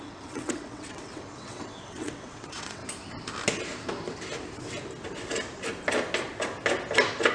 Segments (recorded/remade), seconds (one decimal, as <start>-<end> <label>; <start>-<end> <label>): 0.0-2.8 remade; 2.8-7.3 recorded